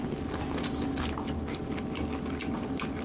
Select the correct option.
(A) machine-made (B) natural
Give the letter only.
B